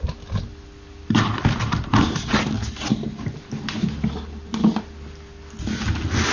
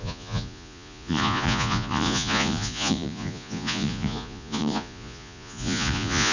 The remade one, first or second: second